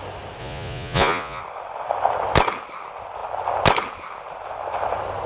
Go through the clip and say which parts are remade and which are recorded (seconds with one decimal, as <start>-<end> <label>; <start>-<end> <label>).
0.0-0.4 recorded; 0.4-1.4 remade; 1.4-5.3 recorded